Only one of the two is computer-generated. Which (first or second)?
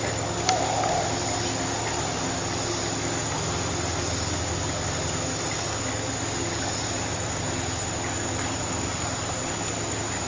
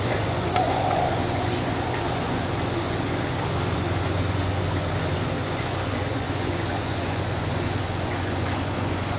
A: second